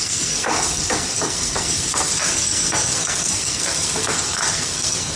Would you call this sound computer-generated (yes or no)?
yes